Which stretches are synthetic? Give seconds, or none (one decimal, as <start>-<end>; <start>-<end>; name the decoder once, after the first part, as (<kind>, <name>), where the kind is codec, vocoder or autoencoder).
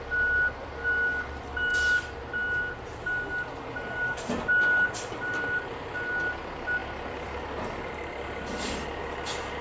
none